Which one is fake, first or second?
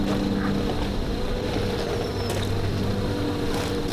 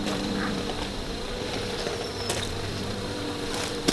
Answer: second